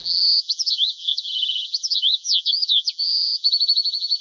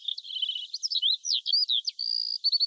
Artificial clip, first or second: first